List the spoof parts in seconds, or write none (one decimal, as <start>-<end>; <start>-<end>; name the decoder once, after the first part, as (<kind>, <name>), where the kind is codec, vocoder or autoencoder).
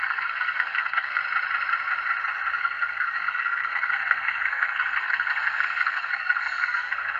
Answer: 0.0-1.2 (codec, SNAC); 2.6-7.2